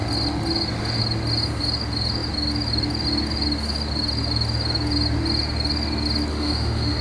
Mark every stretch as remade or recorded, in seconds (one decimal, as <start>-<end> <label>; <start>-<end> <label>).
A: 0.0-6.3 recorded; 6.3-7.0 remade